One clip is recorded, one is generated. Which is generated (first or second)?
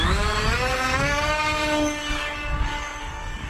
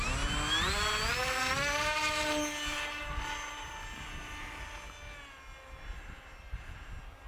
first